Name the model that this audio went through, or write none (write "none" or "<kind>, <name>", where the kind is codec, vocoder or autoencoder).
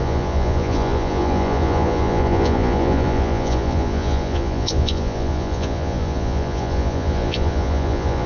vocoder, Vocos